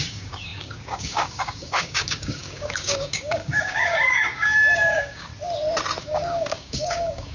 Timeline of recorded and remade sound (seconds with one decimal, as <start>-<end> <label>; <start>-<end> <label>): 0.0-5.3 remade; 5.3-6.0 recorded; 6.0-7.3 remade